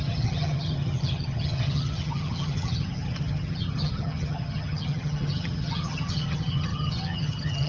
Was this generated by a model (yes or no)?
yes